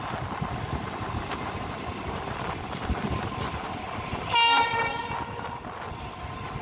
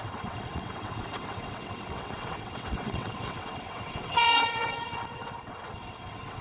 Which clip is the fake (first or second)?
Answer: second